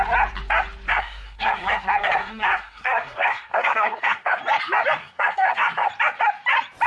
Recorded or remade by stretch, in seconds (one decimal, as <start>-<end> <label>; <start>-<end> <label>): 0.0-0.9 recorded; 0.9-4.4 remade; 4.4-5.0 recorded; 5.0-5.9 remade; 5.9-6.9 recorded